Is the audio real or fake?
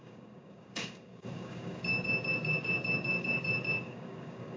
fake